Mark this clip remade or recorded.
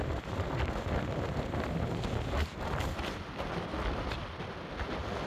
recorded